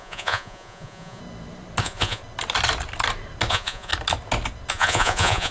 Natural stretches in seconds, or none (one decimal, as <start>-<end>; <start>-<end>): 1.2-1.8; 2.2-3.5; 3.9-4.7